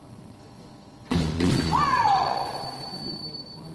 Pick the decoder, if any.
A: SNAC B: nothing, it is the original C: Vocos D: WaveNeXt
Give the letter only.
C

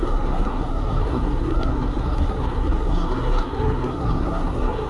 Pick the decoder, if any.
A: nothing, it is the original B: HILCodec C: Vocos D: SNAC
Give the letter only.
D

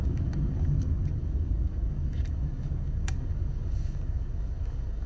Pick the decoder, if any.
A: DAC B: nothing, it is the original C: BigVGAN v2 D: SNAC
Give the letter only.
A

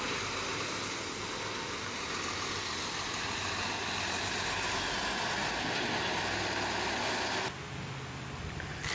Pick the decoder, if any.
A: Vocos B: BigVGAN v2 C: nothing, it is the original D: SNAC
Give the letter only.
C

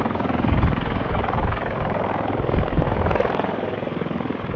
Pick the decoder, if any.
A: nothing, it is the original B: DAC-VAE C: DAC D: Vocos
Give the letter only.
C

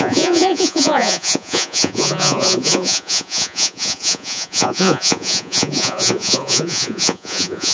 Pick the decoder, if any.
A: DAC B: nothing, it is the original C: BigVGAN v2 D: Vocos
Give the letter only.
D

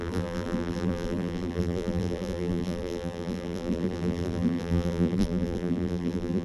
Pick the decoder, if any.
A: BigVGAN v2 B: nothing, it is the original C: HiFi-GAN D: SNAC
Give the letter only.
A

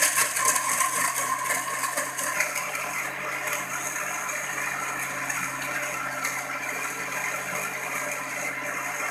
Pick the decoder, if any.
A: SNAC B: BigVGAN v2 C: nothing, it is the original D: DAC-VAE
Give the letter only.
C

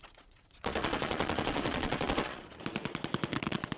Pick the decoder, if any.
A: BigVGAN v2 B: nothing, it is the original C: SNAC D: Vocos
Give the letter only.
D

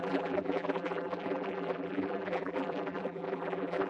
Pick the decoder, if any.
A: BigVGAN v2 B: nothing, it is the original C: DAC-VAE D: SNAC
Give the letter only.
A